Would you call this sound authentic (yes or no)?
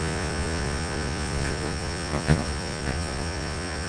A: no